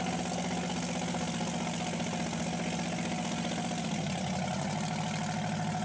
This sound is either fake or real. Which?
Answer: real